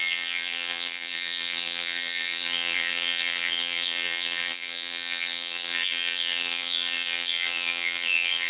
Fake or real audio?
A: fake